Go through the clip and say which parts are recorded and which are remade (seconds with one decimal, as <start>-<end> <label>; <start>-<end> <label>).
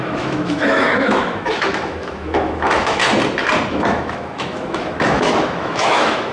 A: 0.0-3.0 remade; 3.0-3.7 recorded; 3.7-6.3 remade